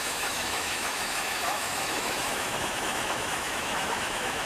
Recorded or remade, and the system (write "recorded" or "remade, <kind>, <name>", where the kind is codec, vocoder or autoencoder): remade, autoencoder, DAC-VAE